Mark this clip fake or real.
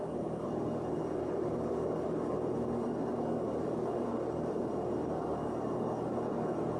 fake